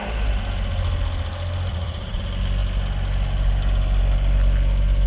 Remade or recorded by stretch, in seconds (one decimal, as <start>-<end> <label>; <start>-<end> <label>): 0.0-1.7 recorded; 1.7-2.2 remade; 2.2-5.1 recorded